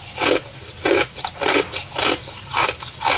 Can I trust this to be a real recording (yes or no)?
yes